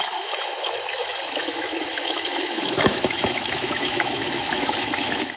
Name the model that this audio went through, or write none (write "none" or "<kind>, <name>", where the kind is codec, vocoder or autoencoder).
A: autoencoder, DAC-VAE